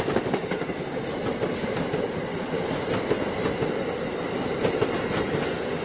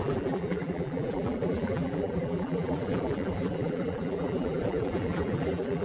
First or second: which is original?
first